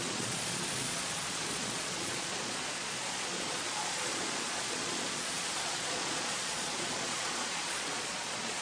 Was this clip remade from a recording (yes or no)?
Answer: yes